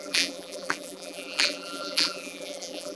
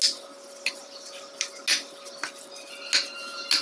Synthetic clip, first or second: first